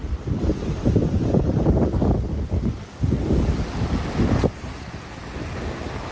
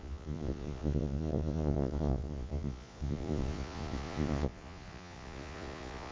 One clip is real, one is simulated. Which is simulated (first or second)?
second